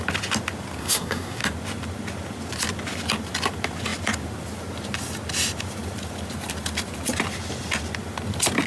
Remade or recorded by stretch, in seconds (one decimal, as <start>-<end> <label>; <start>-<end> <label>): 0.0-0.8 recorded; 0.8-1.4 remade; 1.4-8.7 recorded